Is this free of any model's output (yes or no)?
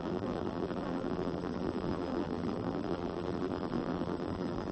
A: no